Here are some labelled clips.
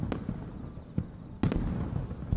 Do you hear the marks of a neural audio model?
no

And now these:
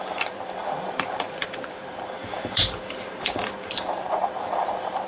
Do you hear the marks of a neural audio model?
yes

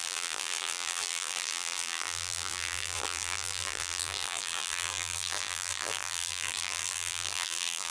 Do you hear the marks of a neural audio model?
yes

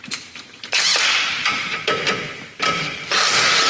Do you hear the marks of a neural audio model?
yes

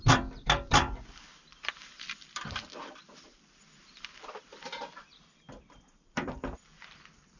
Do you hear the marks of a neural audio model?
yes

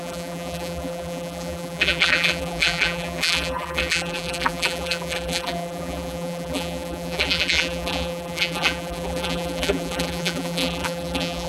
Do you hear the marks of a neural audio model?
yes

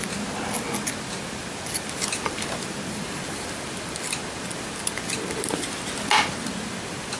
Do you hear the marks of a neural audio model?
no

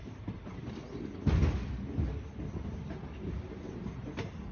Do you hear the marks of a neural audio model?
no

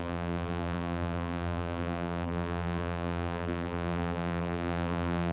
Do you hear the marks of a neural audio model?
yes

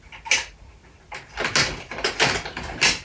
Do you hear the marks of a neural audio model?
no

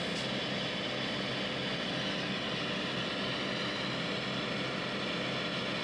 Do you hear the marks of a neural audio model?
no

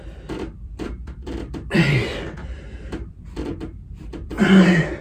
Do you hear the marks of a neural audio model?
yes